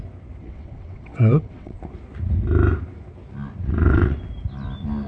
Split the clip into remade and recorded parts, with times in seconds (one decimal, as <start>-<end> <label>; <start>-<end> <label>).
0.0-0.4 recorded; 0.4-1.8 remade; 1.8-3.6 recorded; 3.6-4.2 remade; 4.2-5.1 recorded